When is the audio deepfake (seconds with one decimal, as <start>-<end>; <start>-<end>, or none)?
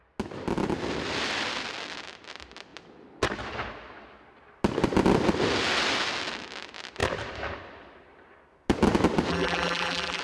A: 9.3-10.2